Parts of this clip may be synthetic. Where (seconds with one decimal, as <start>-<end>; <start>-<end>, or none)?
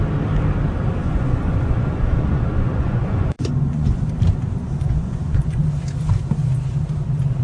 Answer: 1.0-4.0; 4.6-5.6